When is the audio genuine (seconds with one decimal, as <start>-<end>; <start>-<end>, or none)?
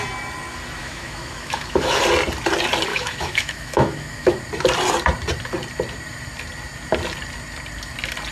0.0-0.8; 2.0-2.9; 4.4-8.3